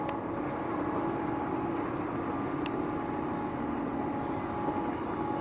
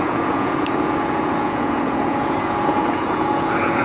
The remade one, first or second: second